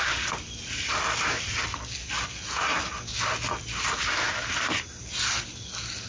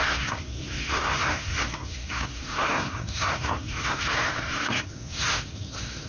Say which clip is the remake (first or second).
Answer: second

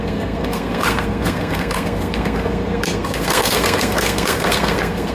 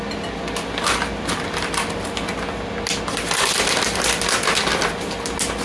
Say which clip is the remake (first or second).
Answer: first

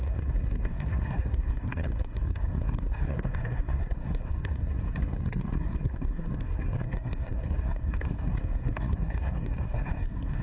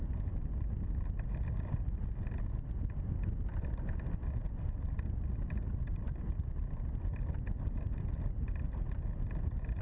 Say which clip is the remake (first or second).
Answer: first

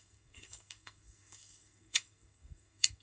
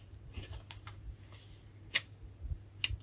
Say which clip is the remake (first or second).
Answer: first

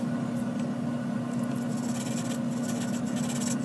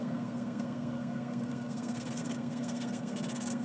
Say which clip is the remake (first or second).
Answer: second